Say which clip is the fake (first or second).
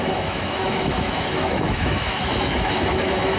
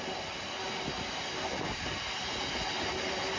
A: first